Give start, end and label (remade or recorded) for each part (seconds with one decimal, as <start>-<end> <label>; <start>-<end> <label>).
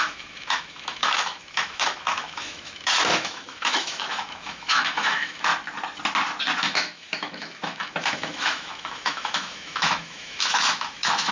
0.0-5.5 remade; 5.5-6.6 recorded; 6.6-11.3 remade